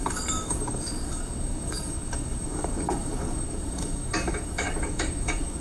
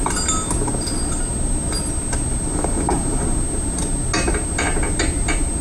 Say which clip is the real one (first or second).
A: second